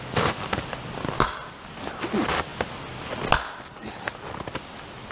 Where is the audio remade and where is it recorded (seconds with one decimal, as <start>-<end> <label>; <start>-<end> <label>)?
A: 0.0-5.1 recorded